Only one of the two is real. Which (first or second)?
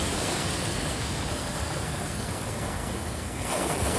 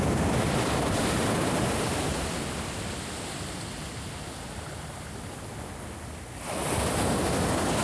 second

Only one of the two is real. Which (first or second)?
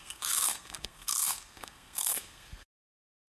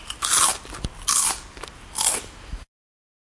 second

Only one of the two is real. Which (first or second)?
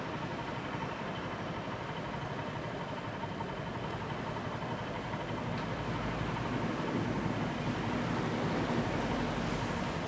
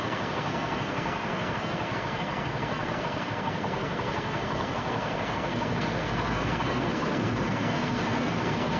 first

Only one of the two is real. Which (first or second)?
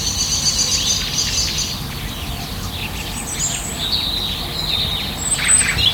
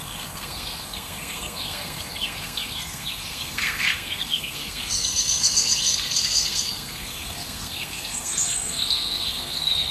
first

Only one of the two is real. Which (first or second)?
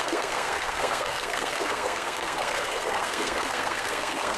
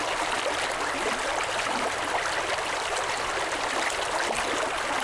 second